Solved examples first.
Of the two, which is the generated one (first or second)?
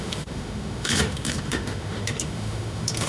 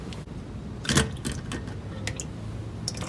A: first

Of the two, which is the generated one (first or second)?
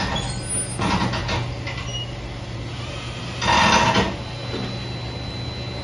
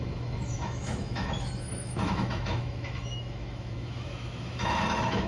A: second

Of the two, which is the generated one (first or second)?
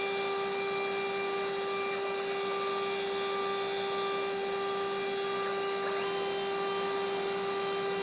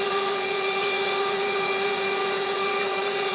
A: second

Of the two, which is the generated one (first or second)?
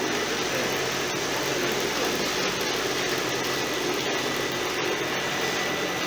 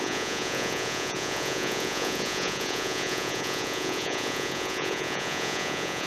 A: second